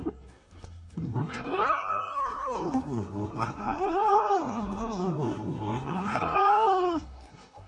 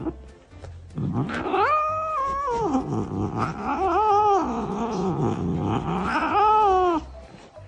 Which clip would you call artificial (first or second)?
first